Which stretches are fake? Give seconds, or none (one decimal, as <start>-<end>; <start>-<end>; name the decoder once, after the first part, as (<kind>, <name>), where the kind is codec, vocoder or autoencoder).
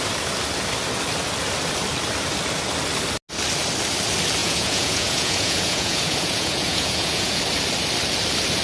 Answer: 4.4-7.4 (vocoder, Vocos)